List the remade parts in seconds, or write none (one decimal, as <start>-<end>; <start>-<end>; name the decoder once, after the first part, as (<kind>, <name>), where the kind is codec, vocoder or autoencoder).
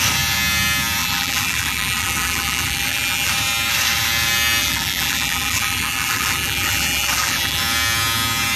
1.0-3.3 (vocoder, BigVGAN v2); 4.6-7.6